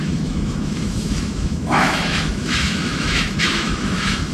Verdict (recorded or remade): remade